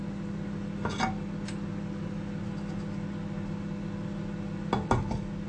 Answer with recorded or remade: recorded